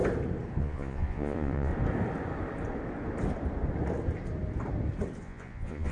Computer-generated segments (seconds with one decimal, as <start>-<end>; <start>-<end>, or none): 0.6-1.7; 5.2-5.9

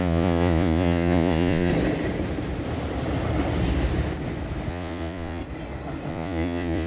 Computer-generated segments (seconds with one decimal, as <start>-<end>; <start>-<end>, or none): 0.0-1.7; 4.7-5.4; 6.1-6.9

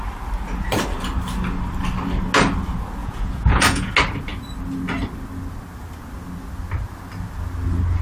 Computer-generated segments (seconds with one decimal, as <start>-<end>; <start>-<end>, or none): 3.0-3.9

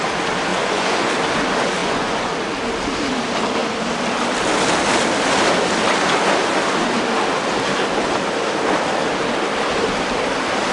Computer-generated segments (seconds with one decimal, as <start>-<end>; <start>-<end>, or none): 0.5-1.1; 1.8-2.3

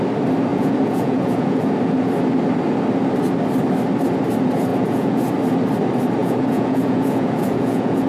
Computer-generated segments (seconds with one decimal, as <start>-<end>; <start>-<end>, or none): 0.5-1.7; 4.7-5.3; 6.2-8.1